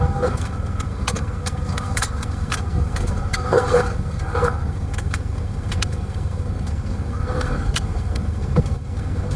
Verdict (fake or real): fake